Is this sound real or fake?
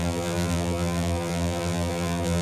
fake